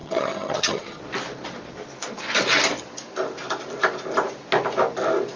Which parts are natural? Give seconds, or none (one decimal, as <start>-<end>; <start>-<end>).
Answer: 1.0-5.4